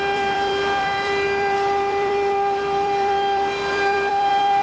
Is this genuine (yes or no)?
no